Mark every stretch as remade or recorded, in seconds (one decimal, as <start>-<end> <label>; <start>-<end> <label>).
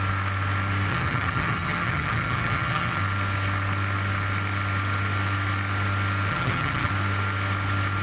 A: 0.0-0.9 recorded; 0.9-3.0 remade; 3.0-6.3 recorded; 6.3-6.9 remade; 6.9-8.0 recorded